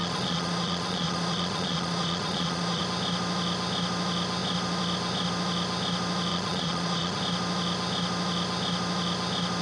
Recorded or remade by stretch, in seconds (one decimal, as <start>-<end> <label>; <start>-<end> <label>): 0.0-2.8 remade; 2.8-6.3 recorded; 6.3-7.2 remade; 7.2-9.6 recorded